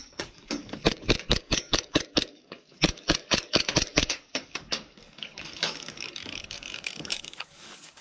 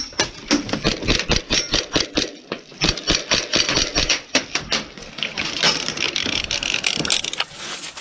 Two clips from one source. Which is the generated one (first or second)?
first